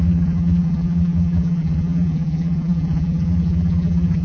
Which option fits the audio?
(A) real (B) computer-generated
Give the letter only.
B